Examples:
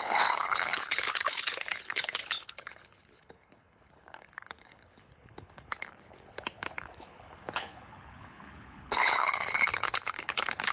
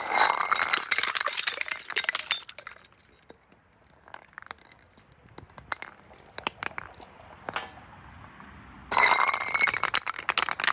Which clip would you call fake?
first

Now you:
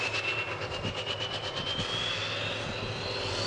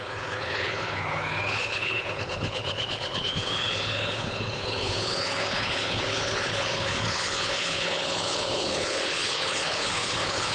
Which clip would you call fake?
second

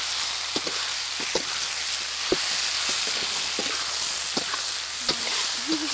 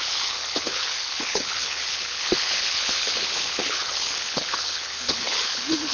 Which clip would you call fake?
second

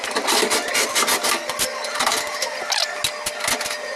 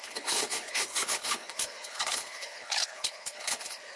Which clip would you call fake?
second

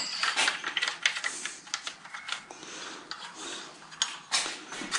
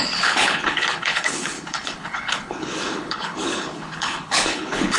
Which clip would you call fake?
second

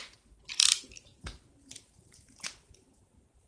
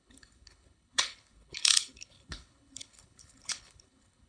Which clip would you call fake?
second